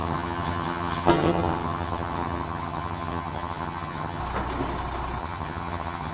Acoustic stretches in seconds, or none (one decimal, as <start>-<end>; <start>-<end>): 4.2-5.2